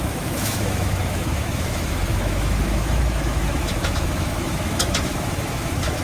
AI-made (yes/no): yes